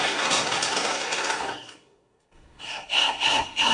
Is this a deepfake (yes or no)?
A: yes